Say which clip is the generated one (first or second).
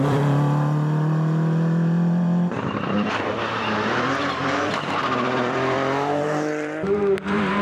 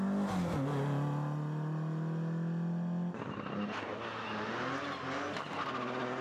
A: first